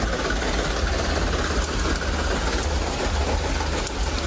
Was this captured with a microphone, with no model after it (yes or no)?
yes